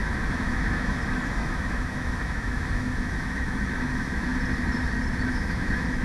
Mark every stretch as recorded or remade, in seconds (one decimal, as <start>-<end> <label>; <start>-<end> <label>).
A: 0.0-4.3 remade; 4.3-5.3 recorded; 5.3-6.0 remade